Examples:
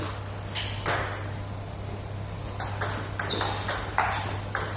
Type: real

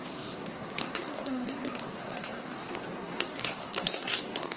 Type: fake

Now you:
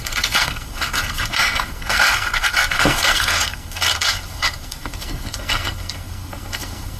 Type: fake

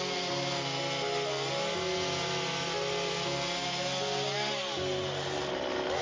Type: real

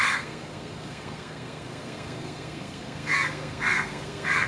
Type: fake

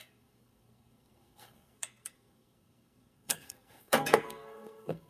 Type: fake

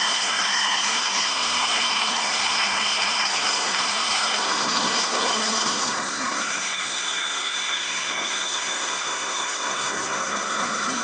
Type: fake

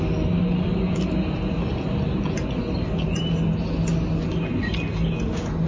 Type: real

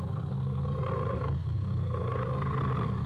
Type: real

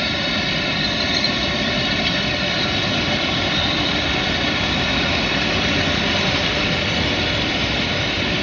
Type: real